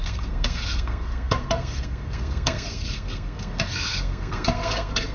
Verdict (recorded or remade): remade